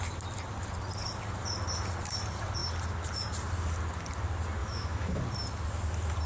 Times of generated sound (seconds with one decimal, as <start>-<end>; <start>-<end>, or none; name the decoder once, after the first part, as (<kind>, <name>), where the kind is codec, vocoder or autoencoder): 4.6-5.2 (autoencoder, DAC-VAE)